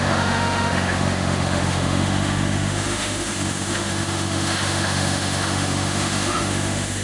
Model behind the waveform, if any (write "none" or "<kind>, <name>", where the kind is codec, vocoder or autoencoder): autoencoder, DAC-VAE